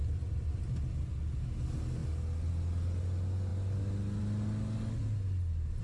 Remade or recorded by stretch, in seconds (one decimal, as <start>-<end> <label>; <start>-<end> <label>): 0.0-0.6 remade; 0.6-5.8 recorded

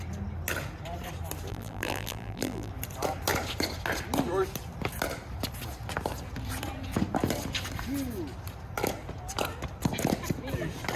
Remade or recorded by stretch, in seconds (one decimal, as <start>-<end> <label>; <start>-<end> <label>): 0.0-1.5 recorded; 1.5-2.7 remade; 2.7-11.0 recorded

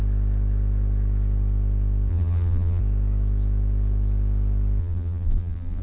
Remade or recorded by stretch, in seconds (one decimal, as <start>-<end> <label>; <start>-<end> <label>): 0.0-2.1 recorded; 2.1-2.8 remade; 2.8-4.8 recorded; 4.8-5.8 remade

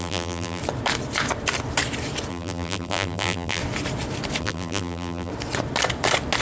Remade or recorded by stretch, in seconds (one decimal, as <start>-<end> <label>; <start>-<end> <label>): 0.0-0.6 remade; 0.6-2.3 recorded; 2.3-3.6 remade; 3.6-4.4 recorded; 4.4-5.3 remade; 5.3-6.4 recorded

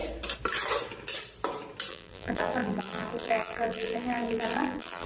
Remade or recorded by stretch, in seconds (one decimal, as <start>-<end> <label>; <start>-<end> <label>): 0.0-1.9 recorded; 1.9-5.1 remade